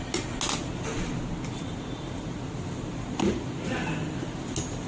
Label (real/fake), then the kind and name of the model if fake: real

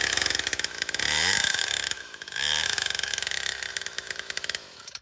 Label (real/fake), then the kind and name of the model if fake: fake, autoencoder, DAC-VAE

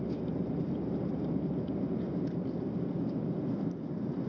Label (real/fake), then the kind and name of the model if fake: real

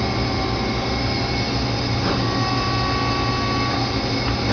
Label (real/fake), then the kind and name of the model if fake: real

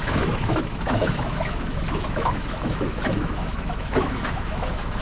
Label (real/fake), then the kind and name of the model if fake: fake, autoencoder, DAC-VAE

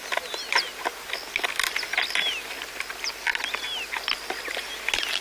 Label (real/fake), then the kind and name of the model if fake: real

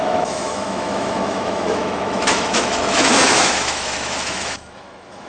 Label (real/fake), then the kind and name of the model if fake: fake, autoencoder, DAC-VAE